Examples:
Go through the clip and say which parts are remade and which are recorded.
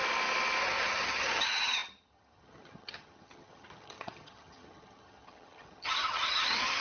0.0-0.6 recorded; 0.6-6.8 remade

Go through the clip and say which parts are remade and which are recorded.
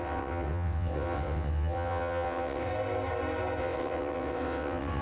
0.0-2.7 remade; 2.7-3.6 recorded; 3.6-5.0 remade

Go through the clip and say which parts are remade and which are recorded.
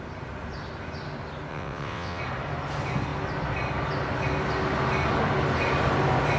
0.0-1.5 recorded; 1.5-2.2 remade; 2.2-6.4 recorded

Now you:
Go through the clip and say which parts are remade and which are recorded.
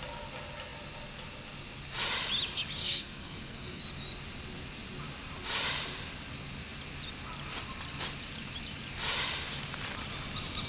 0.0-2.8 recorded; 2.8-3.8 remade; 3.8-10.7 recorded